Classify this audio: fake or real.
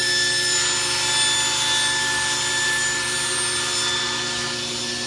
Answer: real